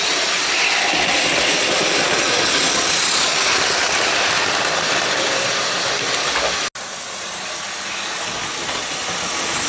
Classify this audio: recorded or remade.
recorded